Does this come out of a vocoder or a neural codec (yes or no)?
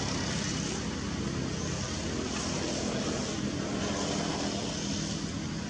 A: no